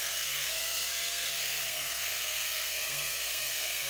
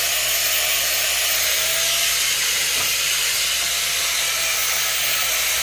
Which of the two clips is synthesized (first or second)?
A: first